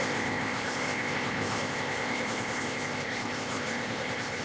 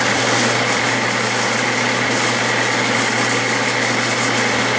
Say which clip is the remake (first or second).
first